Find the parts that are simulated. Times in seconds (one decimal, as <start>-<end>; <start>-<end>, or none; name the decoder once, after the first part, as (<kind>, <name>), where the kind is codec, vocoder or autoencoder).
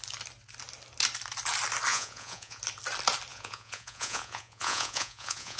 1.9-2.6 (vocoder, Vocos); 3.3-5.6